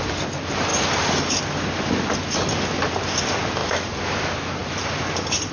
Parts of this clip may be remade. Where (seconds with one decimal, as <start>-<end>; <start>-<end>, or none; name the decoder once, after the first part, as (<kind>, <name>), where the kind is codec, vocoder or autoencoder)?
3.6-4.1 (vocoder, BigVGAN v2); 4.6-5.5